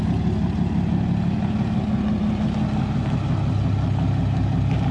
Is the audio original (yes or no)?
yes